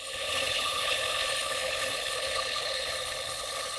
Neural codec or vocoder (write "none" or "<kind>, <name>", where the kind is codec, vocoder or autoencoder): codec, HILCodec